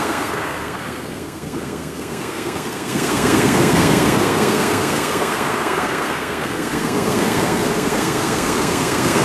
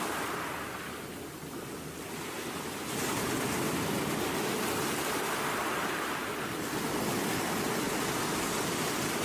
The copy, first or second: first